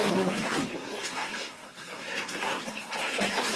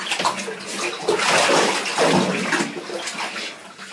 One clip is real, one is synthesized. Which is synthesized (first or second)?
first